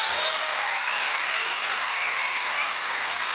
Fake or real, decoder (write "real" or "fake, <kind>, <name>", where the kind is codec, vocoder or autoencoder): fake, codec, DAC